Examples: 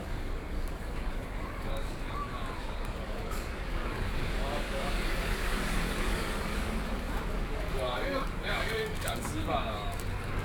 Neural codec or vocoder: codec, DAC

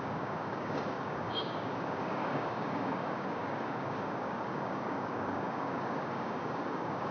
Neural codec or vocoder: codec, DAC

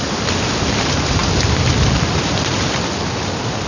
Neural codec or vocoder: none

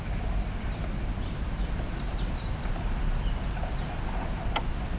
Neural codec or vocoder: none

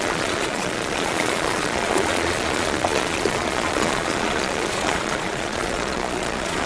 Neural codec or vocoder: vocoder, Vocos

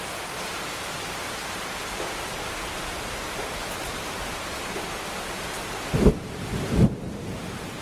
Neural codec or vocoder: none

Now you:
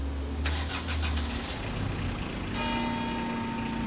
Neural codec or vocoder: none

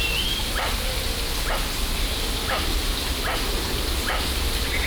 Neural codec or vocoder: none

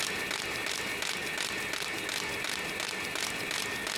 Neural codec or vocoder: none